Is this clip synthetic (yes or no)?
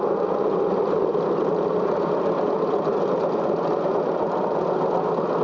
no